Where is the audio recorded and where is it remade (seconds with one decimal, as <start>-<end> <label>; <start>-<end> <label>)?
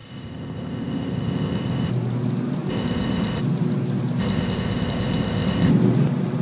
0.0-1.9 remade; 1.9-2.7 recorded; 2.7-3.4 remade; 3.4-4.2 recorded; 4.2-5.7 remade; 5.7-6.4 recorded